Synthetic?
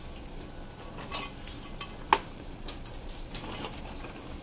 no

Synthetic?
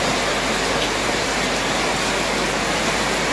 no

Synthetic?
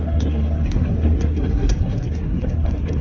yes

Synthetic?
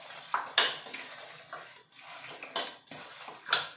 no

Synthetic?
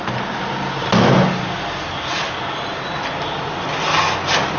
no